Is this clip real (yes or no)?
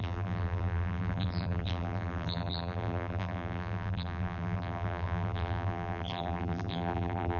no